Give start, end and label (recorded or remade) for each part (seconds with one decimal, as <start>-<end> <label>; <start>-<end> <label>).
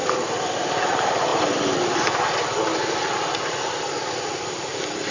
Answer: 0.0-0.8 recorded; 0.8-1.3 remade; 1.3-4.4 recorded; 4.4-5.1 remade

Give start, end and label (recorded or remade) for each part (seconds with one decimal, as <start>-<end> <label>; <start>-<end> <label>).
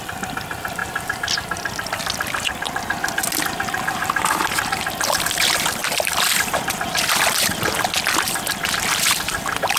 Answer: 0.0-5.8 recorded; 5.8-6.7 remade; 6.7-9.8 recorded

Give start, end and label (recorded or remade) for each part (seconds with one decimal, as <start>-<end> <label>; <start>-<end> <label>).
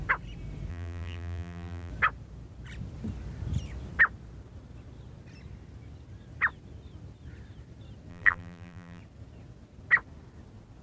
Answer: 0.0-0.7 recorded; 0.7-1.9 remade; 1.9-8.1 recorded; 8.1-9.0 remade; 9.0-10.8 recorded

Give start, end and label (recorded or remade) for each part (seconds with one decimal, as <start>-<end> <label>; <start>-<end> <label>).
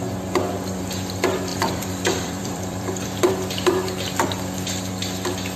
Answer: 0.0-1.5 recorded; 1.5-3.3 remade; 3.3-5.6 recorded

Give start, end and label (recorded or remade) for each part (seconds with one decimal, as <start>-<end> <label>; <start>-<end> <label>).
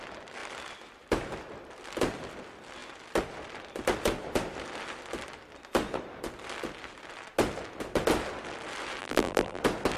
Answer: 0.0-9.0 recorded; 9.0-9.6 remade; 9.6-10.0 recorded